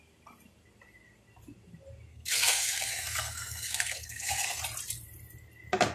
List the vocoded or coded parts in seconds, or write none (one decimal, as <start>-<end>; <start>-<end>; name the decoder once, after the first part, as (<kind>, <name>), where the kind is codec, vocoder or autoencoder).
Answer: 2.1-4.6 (codec, SNAC)